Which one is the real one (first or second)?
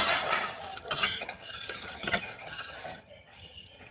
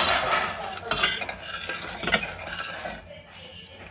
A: second